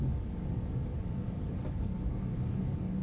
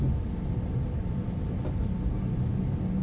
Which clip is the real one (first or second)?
second